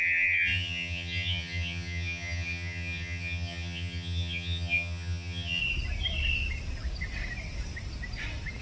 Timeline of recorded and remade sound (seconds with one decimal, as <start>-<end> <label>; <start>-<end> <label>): 0.0-5.6 remade; 5.6-8.6 recorded